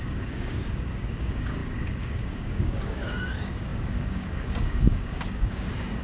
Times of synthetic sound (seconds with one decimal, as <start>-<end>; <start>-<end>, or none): 0.0-6.0